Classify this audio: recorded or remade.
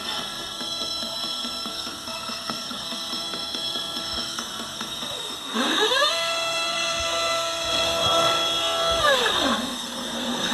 remade